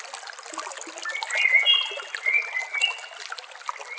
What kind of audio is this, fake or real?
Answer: real